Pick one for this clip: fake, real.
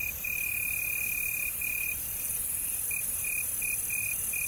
real